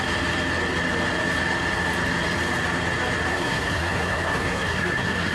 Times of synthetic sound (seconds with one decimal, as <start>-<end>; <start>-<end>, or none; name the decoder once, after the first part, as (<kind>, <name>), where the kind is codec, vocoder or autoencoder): 3.3-5.3 (codec, SNAC)